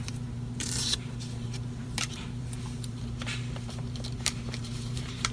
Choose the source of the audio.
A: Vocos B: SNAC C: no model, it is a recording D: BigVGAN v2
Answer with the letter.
D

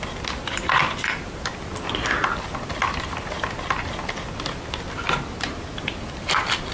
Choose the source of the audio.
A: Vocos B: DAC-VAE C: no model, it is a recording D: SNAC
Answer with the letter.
C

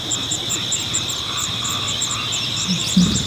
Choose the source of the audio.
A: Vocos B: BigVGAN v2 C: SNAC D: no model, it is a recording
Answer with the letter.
B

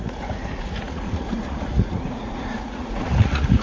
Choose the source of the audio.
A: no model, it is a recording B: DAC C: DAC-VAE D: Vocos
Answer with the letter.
D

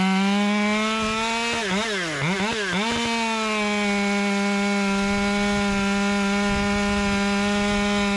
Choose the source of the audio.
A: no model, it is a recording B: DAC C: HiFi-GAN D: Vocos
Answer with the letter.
A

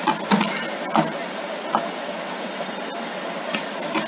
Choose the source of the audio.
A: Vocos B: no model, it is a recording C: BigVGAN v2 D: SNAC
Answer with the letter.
B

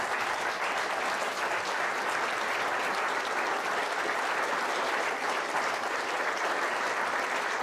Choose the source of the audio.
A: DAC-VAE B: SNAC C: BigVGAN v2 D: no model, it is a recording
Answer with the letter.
D